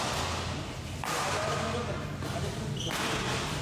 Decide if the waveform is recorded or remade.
recorded